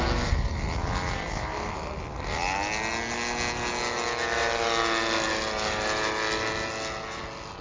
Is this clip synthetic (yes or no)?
no